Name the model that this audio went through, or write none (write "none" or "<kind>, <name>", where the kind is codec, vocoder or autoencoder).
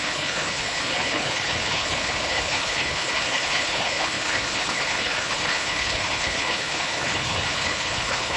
codec, HILCodec